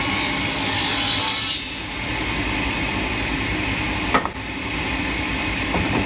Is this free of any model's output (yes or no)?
no